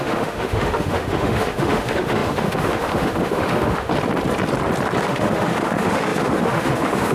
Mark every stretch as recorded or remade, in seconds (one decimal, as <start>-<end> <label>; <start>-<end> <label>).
0.0-3.9 remade; 3.9-5.0 recorded; 5.0-7.1 remade